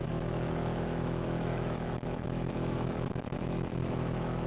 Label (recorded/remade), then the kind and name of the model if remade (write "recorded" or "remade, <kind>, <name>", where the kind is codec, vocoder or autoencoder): remade, autoencoder, DAC-VAE